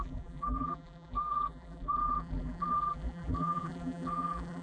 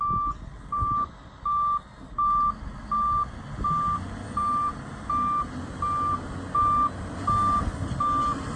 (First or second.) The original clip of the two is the second